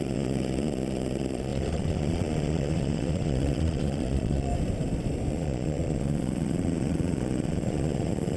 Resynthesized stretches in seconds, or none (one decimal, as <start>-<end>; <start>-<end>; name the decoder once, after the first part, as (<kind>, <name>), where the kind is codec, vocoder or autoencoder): 0.0-4.5 (vocoder, Vocos); 5.3-8.4